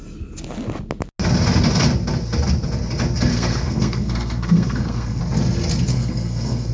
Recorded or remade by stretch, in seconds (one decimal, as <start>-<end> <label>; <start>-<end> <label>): 0.0-3.3 recorded; 3.3-5.2 remade; 5.2-5.9 recorded; 5.9-6.7 remade